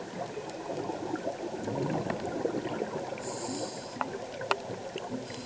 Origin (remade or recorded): recorded